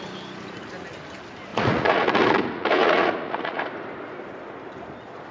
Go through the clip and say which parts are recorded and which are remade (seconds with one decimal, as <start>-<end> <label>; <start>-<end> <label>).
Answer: 0.0-1.5 recorded; 1.5-3.6 remade; 3.6-5.3 recorded